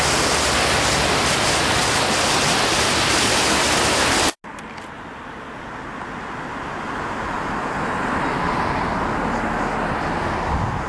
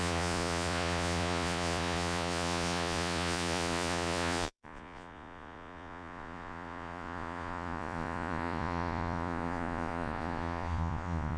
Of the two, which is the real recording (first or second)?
first